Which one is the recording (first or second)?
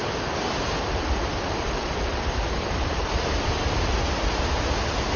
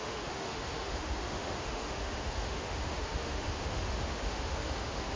first